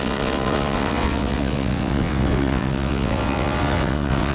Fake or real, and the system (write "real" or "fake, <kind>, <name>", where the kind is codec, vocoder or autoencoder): fake, vocoder, WaveNeXt